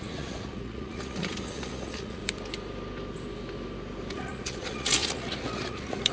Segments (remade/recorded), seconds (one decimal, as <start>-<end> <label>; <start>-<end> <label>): 0.0-2.2 remade; 2.2-4.1 recorded; 4.1-6.1 remade